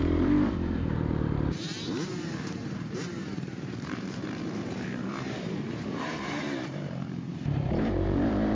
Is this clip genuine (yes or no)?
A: no